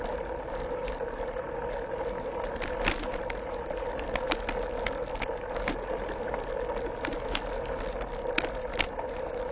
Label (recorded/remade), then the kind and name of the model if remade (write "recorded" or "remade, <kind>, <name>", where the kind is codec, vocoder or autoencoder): recorded